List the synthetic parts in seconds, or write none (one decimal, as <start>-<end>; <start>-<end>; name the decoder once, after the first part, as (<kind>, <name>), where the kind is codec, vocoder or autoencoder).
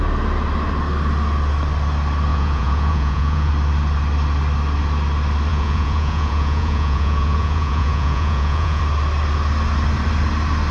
2.3-3.5 (vocoder, Vocos); 5.5-8.8